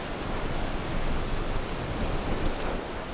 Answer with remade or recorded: recorded